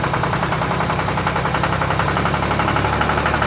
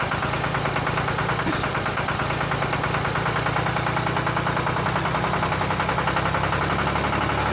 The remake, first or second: first